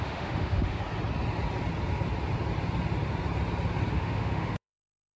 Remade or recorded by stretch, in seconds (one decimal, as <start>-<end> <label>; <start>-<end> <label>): 0.0-0.8 remade; 0.8-3.9 recorded; 3.9-5.2 remade